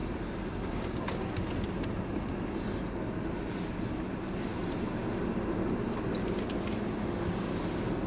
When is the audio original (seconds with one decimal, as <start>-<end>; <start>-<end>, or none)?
0.0-8.1